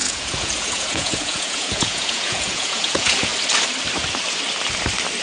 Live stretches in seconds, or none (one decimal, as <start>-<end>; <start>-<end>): 3.3-5.2